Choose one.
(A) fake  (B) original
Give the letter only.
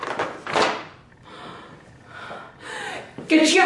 B